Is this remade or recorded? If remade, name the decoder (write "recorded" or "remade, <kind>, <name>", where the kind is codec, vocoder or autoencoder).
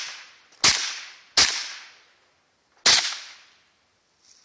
recorded